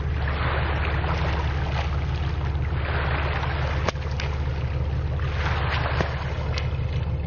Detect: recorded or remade recorded